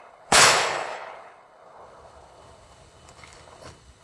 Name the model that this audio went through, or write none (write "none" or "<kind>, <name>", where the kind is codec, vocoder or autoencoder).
codec, HILCodec